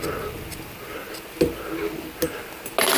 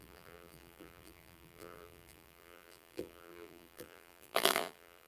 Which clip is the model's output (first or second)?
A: second